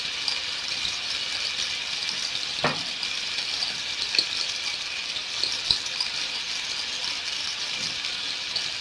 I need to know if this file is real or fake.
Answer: real